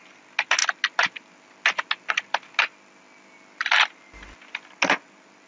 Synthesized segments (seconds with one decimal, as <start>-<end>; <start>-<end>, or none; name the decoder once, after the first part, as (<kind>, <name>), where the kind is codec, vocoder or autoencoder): none